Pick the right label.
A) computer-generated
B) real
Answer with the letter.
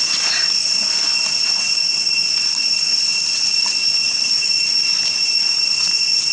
B